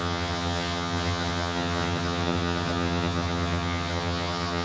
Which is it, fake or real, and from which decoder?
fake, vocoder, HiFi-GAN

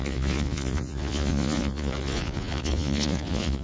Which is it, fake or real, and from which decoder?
fake, vocoder, Vocos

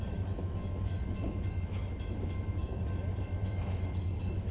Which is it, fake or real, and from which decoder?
fake, autoencoder, DAC-VAE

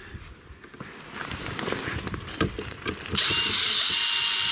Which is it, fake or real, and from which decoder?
real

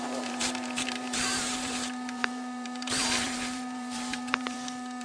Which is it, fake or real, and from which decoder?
fake, vocoder, BigVGAN v2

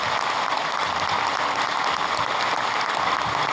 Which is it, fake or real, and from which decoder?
real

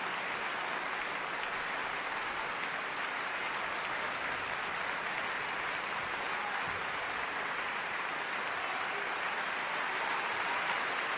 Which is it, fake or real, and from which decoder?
real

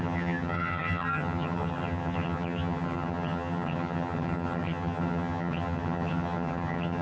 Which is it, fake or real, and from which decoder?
fake, vocoder, HiFi-GAN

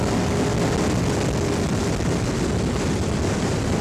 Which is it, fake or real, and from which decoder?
real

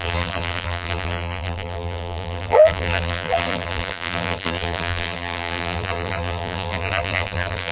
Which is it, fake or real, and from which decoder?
fake, vocoder, BigVGAN v2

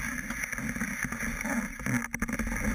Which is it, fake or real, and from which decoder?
real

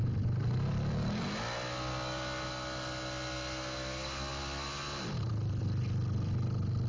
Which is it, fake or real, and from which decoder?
real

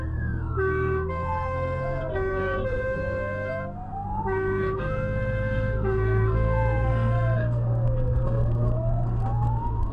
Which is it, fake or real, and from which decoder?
fake, codec, SNAC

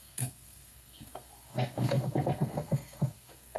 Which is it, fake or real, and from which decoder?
fake, codec, SNAC